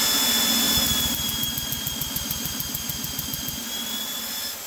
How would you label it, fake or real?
real